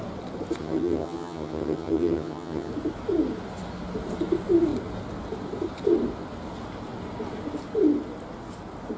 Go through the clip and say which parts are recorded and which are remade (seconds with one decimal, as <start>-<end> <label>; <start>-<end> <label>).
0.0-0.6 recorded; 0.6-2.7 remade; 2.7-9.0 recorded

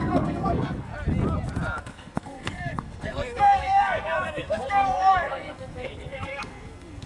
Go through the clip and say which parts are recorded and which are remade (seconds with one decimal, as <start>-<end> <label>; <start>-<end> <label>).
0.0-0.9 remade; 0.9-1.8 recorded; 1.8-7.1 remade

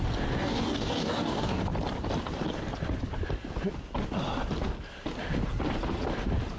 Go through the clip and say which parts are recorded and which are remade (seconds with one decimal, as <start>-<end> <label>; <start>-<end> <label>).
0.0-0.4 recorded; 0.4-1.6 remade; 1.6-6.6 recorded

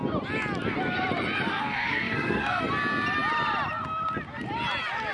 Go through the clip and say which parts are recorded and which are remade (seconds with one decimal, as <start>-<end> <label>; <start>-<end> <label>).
0.0-1.5 recorded; 1.5-2.6 remade; 2.6-5.1 recorded